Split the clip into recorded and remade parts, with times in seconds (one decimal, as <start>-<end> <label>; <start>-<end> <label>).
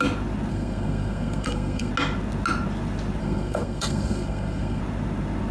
0.0-0.5 recorded; 0.5-1.9 remade; 1.9-3.2 recorded; 3.2-4.8 remade; 4.8-5.5 recorded